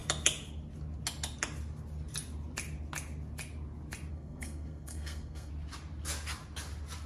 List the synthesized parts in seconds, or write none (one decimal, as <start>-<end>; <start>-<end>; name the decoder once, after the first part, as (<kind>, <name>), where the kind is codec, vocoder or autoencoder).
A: 4.1-5.5 (codec, SNAC)